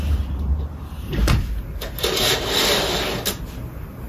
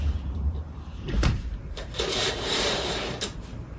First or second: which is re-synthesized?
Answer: second